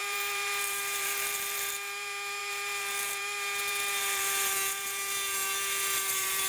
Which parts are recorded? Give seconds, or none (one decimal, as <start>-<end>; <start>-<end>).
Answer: none